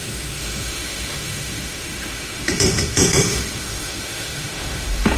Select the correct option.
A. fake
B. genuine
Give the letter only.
A